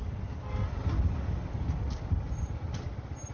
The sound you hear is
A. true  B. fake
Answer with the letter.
A